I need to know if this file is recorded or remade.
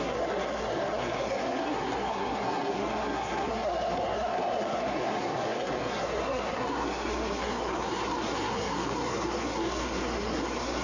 remade